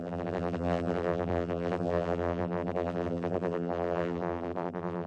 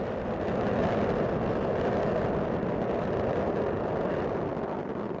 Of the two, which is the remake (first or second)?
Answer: first